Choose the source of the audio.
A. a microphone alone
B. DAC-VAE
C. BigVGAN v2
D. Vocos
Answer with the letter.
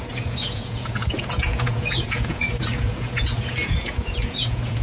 D